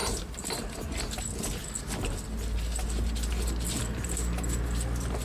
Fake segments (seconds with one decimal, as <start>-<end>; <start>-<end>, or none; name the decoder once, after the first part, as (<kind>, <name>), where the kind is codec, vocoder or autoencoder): none